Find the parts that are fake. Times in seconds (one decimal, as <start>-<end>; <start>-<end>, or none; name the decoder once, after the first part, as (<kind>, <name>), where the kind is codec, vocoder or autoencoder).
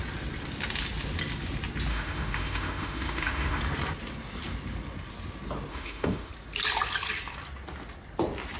1.9-3.6 (autoencoder, DAC-VAE); 5.7-6.3